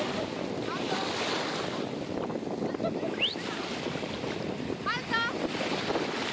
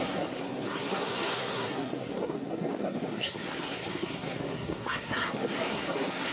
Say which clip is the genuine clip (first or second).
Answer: first